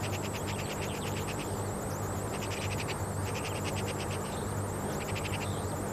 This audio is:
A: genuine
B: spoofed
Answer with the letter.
A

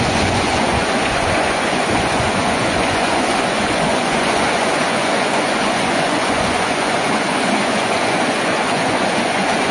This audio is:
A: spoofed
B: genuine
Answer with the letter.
A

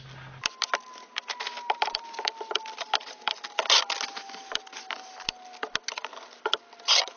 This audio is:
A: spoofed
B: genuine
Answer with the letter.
B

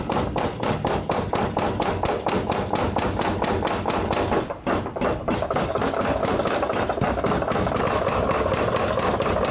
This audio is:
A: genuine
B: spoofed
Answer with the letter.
A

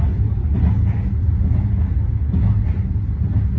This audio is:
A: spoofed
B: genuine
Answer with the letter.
B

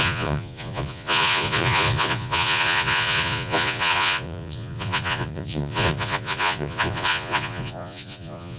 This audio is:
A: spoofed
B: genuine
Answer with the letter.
A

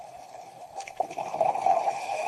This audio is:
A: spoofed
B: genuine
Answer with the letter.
A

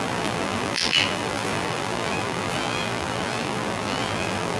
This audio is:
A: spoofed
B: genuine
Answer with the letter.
A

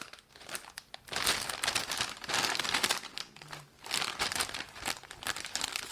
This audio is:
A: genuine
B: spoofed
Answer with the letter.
A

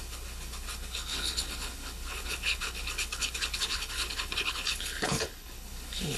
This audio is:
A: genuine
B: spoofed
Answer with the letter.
B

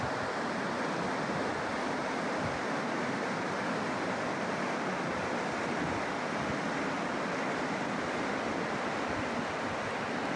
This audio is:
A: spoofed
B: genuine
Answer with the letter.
B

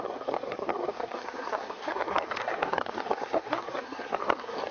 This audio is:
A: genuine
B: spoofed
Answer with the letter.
B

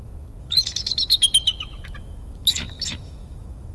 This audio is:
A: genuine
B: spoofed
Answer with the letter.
B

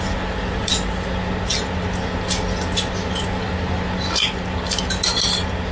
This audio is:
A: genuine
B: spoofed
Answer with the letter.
A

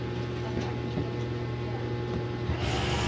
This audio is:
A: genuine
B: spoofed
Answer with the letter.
A